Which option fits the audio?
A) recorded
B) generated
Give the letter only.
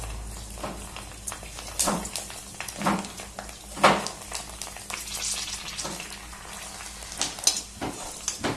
A